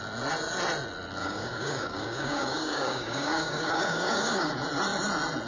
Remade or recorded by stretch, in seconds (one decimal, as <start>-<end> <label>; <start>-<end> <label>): 0.0-1.2 recorded; 1.2-4.5 remade; 4.5-5.5 recorded